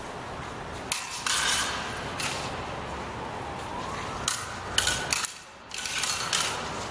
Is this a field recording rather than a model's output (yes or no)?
yes